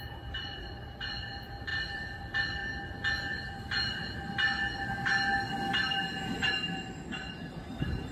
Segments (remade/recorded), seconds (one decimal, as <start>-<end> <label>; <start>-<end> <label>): 0.0-2.6 remade; 2.6-7.3 recorded; 7.3-8.1 remade